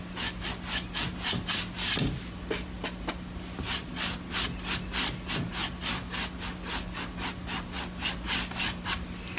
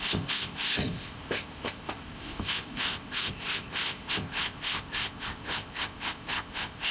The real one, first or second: first